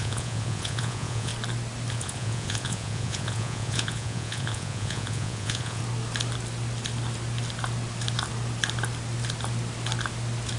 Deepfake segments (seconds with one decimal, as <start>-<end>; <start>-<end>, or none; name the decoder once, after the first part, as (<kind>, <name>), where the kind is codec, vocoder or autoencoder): 0.0-1.3 (vocoder, Vocos); 1.9-5.8

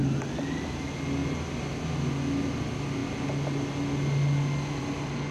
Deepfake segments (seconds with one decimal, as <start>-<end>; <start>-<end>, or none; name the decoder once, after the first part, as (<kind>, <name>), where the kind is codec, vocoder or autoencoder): none

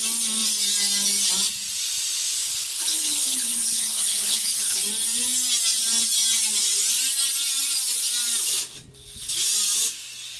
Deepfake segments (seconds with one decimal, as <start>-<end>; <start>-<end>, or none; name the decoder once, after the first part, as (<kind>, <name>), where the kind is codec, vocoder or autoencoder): 2.4-4.8 (codec, HILCodec)

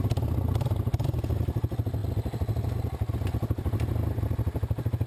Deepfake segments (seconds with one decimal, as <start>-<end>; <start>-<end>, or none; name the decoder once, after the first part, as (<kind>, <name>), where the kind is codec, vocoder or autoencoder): none

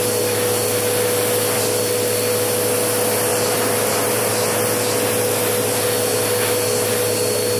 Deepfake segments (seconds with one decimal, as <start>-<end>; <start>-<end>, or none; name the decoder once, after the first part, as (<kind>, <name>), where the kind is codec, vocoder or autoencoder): none

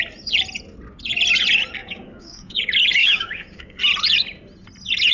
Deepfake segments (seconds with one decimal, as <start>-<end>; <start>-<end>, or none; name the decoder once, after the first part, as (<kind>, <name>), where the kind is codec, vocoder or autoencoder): 1.8-2.6 (codec, DAC); 3.0-3.8

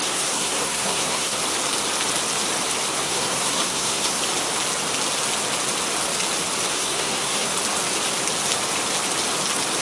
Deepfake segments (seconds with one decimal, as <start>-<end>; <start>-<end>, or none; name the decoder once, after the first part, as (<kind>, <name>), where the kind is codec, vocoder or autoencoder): 0.0-1.4 (codec, SNAC); 3.0-4.2; 6.7-7.5